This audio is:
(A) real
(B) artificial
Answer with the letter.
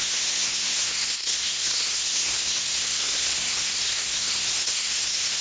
B